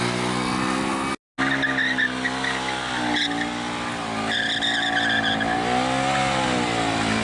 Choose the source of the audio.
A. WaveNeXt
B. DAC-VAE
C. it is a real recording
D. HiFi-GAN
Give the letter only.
C